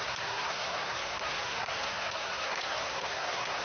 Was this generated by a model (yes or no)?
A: yes